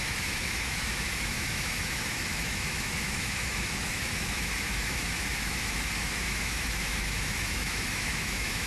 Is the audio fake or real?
fake